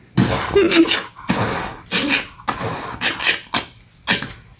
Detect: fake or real real